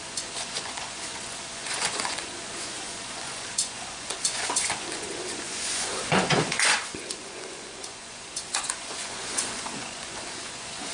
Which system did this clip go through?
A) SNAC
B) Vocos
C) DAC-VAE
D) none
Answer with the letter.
B